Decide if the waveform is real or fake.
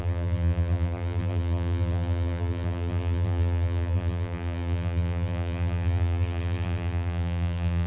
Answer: fake